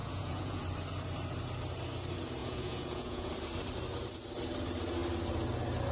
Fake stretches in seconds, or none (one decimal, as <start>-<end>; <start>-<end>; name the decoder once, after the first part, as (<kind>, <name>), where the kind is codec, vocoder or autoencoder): 0.0-0.6 (vocoder, Vocos); 2.4-3.3